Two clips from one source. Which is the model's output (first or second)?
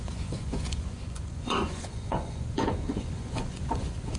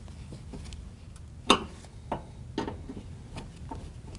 first